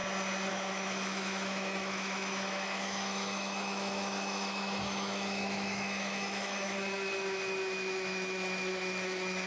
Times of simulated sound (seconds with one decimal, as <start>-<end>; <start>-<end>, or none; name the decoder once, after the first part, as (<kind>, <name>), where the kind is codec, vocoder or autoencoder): 0.5-9.5 (autoencoder, DAC-VAE)